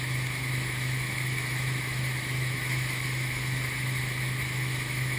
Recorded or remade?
remade